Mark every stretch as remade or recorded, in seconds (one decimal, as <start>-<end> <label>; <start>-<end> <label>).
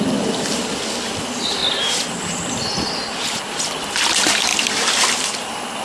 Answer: 0.0-4.5 recorded; 4.5-5.8 remade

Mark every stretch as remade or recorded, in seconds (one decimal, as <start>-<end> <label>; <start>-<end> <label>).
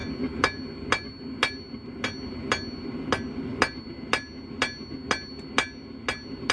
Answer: 0.0-6.5 recorded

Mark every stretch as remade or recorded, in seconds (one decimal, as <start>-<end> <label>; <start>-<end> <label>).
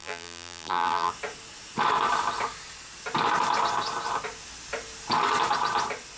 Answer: 0.0-1.1 remade; 1.1-6.2 recorded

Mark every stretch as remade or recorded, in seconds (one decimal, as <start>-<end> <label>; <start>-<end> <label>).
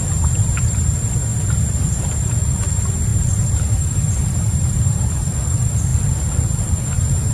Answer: 0.0-1.3 recorded; 1.3-2.0 remade; 2.0-3.1 recorded; 3.1-5.2 remade; 5.2-7.3 recorded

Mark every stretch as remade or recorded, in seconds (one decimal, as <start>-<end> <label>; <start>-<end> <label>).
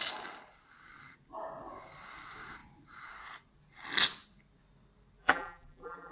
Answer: 0.0-5.2 recorded; 5.2-6.1 remade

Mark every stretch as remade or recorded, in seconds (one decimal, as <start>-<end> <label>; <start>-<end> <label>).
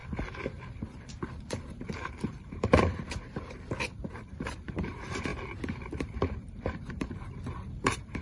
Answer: 0.0-1.3 recorded; 1.3-8.2 remade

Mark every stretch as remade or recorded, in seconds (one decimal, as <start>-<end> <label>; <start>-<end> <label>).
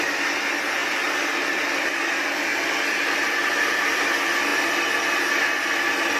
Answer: 0.0-6.2 recorded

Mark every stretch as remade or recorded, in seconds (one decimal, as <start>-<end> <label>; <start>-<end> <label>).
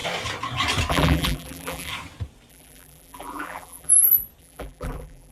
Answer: 0.0-0.9 recorded; 0.9-1.9 remade; 1.9-2.5 recorded; 2.5-3.9 remade; 3.9-4.4 recorded; 4.4-5.3 remade